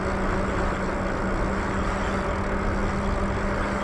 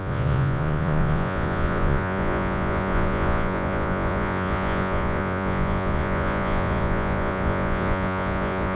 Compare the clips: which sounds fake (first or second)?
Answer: second